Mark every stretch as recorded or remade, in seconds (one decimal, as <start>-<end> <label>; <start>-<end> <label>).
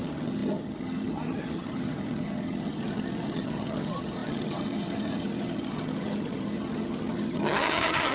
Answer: 0.0-8.1 remade